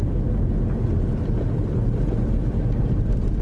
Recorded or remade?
recorded